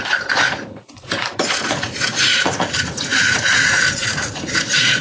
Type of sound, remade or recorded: remade